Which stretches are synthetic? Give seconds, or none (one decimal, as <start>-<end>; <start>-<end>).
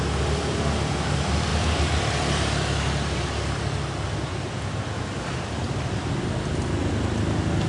1.5-6.1